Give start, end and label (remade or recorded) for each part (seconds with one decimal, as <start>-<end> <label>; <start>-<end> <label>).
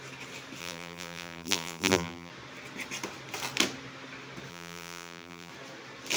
0.0-0.6 recorded; 0.6-2.3 remade; 2.3-4.5 recorded; 4.5-5.5 remade; 5.5-6.2 recorded